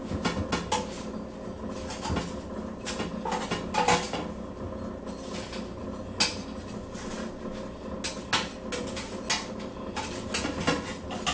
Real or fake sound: real